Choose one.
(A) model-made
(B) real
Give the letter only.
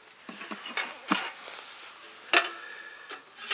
B